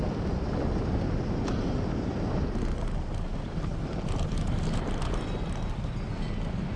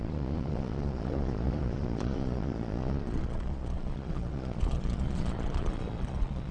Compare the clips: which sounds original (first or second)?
first